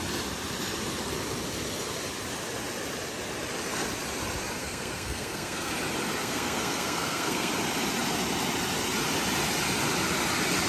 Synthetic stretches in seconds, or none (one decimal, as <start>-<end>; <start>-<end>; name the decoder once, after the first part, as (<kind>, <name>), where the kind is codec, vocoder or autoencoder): 4.6-5.7 (codec, SNAC); 6.2-7.5